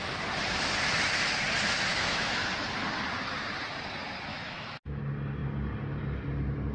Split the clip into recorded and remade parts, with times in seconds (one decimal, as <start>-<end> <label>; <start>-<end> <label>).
0.0-1.9 recorded; 1.9-2.5 remade; 2.5-4.3 recorded; 4.3-5.0 remade; 5.0-6.7 recorded